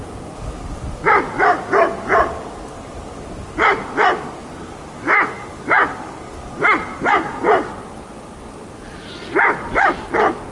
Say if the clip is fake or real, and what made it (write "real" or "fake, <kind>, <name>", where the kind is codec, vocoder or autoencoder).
real